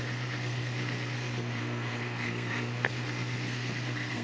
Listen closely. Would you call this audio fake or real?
fake